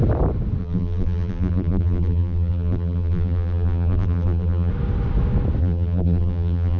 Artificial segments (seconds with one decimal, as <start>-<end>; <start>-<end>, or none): 0.6-4.7; 5.6-6.8